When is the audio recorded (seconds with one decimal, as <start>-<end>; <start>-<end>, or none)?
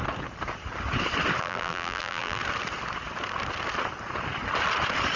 0.0-1.4; 2.4-5.2